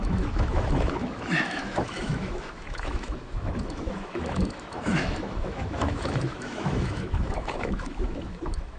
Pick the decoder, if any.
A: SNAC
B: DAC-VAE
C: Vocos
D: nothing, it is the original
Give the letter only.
B